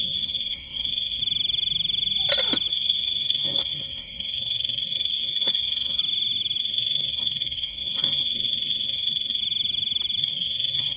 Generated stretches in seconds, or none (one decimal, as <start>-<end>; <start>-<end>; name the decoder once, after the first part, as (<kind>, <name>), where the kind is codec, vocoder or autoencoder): 0.0-1.2 (codec, SNAC); 2.7-6.0; 6.6-9.4; 10.2-11.0